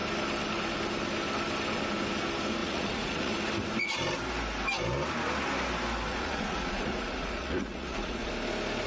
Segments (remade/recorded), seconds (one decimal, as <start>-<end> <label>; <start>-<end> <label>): 0.0-2.6 recorded; 2.6-3.3 remade; 3.3-6.1 recorded; 6.1-8.3 remade; 8.3-8.9 recorded